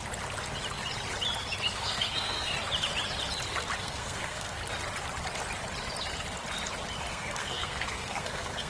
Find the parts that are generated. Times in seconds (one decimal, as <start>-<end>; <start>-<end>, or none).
1.8-2.5; 3.8-4.6; 7.1-8.7